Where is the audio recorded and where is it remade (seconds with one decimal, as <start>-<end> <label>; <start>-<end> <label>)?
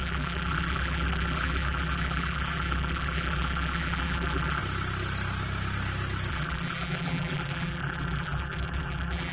0.0-4.6 remade; 4.6-6.3 recorded; 6.3-9.3 remade